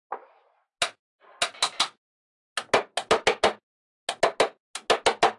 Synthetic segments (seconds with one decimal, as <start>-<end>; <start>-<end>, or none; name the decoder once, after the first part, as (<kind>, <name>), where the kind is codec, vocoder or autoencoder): none